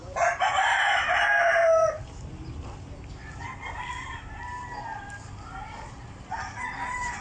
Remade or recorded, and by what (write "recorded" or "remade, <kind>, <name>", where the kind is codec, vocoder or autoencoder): recorded